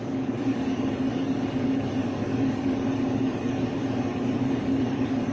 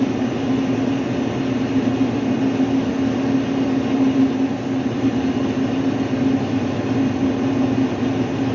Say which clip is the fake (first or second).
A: first